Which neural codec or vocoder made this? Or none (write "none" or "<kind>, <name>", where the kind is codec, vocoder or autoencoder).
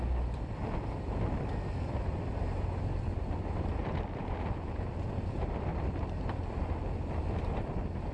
vocoder, BigVGAN v2